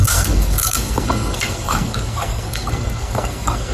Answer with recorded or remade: remade